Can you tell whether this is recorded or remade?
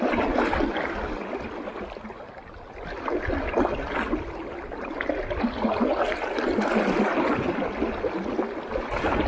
recorded